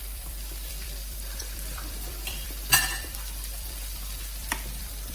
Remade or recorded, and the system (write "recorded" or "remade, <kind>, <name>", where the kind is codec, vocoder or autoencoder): remade, vocoder, BigVGAN v2